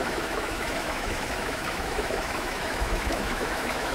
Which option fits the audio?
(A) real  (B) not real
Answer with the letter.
B